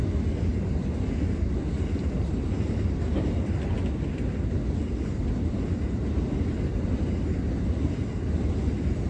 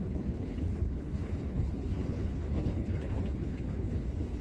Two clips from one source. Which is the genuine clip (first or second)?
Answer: first